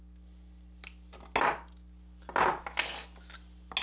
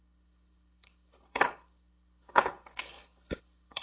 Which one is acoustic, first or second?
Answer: first